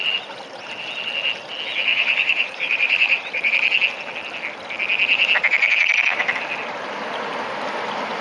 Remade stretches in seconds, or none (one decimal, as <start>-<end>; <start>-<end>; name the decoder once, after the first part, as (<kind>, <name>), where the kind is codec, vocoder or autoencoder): 1.9-3.5 (vocoder, BigVGAN v2)